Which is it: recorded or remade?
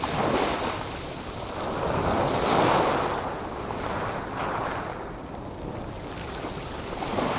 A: recorded